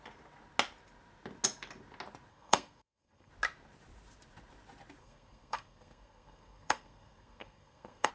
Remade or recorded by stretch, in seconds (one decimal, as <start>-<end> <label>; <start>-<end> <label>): 0.0-2.3 recorded; 2.3-3.3 remade; 3.3-5.0 recorded; 5.0-8.1 remade